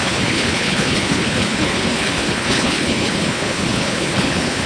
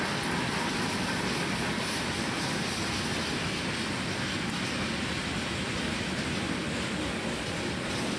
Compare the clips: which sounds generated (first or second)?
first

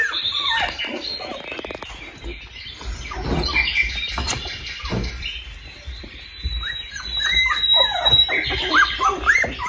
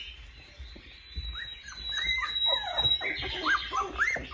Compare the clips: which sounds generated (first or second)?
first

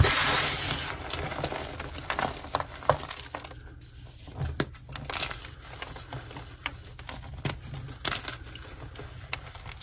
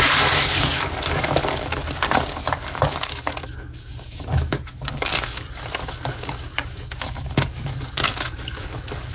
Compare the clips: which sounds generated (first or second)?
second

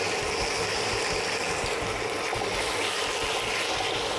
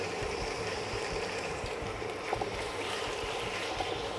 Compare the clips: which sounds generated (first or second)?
second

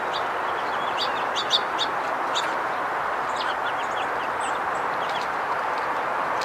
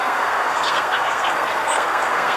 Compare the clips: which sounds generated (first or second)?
second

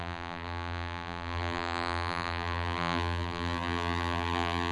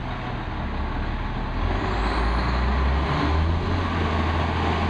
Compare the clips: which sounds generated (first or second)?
first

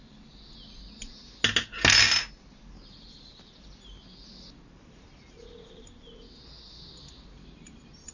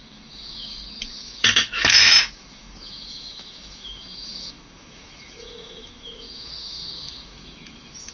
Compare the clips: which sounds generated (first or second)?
second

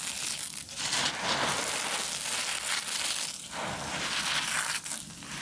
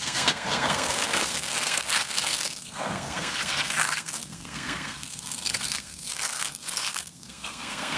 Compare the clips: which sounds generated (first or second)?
second